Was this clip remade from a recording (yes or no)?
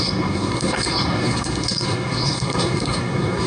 yes